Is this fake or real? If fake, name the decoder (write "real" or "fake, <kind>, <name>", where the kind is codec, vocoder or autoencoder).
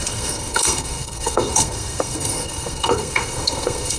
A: fake, codec, SNAC